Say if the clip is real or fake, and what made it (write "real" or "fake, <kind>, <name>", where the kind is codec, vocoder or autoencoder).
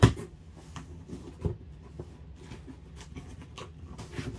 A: real